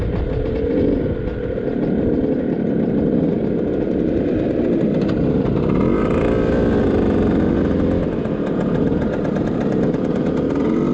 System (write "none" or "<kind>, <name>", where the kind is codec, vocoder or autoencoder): none